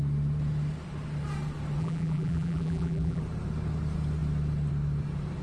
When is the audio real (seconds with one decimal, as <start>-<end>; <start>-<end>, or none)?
0.0-1.8; 3.2-5.4